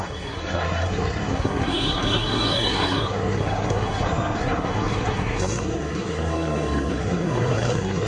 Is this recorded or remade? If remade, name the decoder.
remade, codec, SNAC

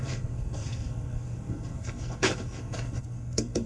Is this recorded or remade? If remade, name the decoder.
remade, codec, SNAC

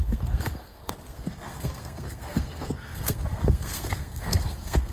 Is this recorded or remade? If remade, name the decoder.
remade, codec, SNAC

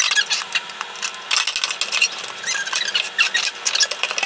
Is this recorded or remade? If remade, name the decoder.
recorded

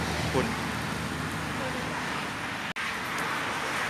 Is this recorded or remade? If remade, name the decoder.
recorded